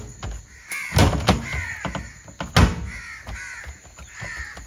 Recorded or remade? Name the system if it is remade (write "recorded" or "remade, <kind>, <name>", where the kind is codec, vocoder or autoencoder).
recorded